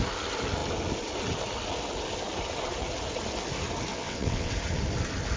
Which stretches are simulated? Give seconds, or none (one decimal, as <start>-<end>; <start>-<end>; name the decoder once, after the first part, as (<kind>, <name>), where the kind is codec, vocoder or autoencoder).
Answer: 3.9-4.5 (vocoder, WaveNeXt)